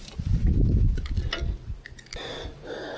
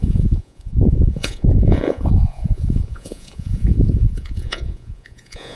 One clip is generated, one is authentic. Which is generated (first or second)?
second